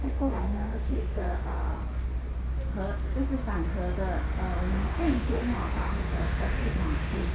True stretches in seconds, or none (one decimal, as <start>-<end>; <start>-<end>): 1.7-4.7